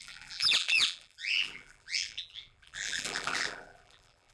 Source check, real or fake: fake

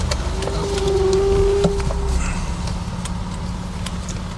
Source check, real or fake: real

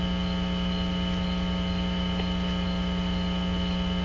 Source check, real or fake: real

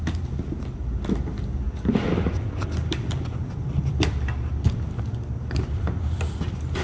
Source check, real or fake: real